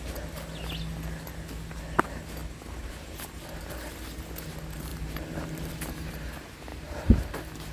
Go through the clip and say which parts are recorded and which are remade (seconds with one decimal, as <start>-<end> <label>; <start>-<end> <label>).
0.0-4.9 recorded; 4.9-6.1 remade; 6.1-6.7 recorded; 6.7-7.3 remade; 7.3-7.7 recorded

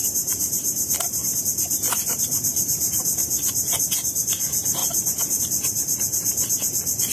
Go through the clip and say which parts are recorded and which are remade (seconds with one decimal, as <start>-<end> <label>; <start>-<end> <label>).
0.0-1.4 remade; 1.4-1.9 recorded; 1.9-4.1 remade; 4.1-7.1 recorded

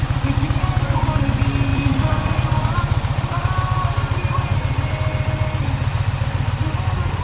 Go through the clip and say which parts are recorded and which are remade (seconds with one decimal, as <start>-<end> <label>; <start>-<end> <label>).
0.0-1.7 recorded; 1.7-4.9 remade; 4.9-7.2 recorded